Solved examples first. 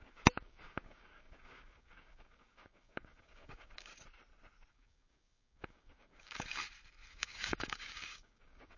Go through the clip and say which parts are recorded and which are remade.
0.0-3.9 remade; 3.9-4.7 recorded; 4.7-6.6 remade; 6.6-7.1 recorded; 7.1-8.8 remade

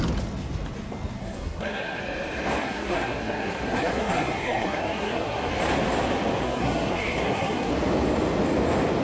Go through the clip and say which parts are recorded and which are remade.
0.0-1.2 recorded; 1.2-2.0 remade; 2.0-2.6 recorded; 2.6-5.5 remade; 5.5-6.4 recorded; 6.4-7.7 remade; 7.7-9.0 recorded